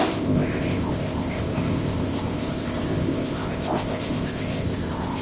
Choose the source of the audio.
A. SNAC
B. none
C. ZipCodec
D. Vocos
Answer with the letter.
C